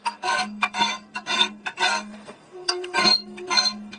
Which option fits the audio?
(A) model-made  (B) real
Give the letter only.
A